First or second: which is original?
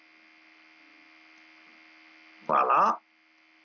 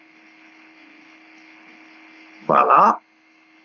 first